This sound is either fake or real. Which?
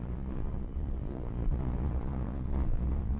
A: fake